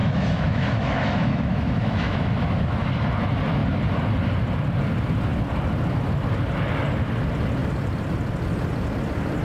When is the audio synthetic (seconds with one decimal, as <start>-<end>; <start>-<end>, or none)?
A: 0.0-2.9